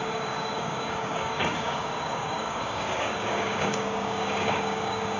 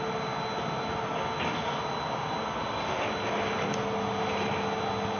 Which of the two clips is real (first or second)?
second